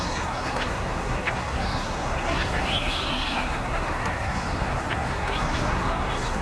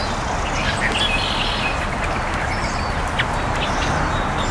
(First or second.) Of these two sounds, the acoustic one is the second